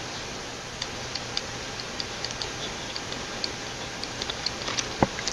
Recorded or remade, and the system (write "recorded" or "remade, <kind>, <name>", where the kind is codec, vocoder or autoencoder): recorded